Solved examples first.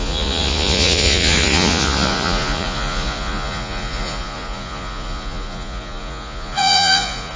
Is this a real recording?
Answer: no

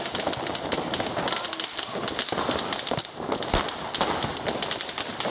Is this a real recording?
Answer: yes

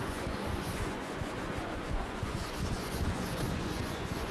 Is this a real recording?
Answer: no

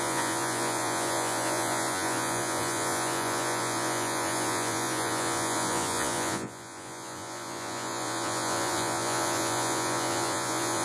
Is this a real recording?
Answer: no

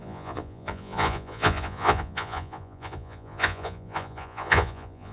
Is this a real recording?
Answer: no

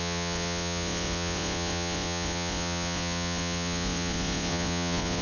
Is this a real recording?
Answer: no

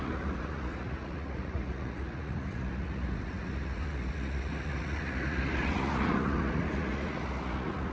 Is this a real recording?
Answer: no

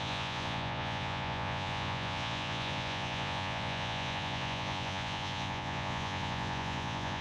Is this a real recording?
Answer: no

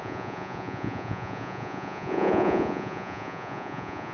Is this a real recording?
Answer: no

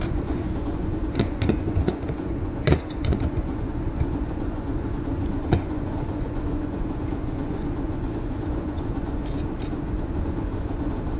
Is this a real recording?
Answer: no